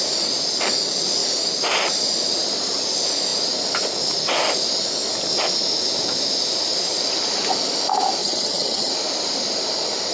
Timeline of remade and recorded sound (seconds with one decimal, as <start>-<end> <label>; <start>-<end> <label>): 0.0-8.2 recorded; 8.2-8.9 remade; 8.9-10.1 recorded